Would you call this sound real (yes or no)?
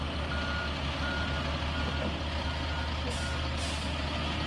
yes